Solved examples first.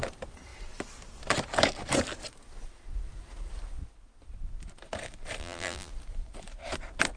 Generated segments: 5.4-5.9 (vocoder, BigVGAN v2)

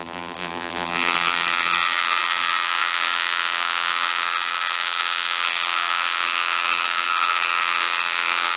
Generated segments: 0.0-8.6 (vocoder, BigVGAN v2)

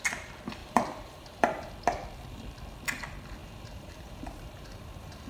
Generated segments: 0.6-1.7 (vocoder, BigVGAN v2); 3.4-5.3

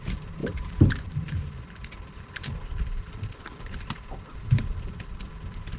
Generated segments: 0.4-1.7 (vocoder, BigVGAN v2)

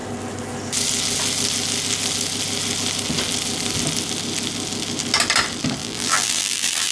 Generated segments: 5.8-6.9 (vocoder, BigVGAN v2)